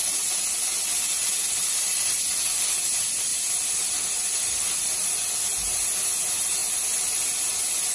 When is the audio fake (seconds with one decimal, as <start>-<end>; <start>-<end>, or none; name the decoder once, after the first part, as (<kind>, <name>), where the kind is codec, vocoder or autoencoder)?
1.4-2.3 (vocoder, BigVGAN v2); 3.3-5.1